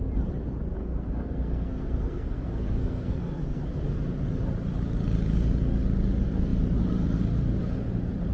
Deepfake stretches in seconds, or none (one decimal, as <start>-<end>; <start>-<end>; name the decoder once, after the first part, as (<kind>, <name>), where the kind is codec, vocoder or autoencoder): 0.8-3.6 (codec, SNAC)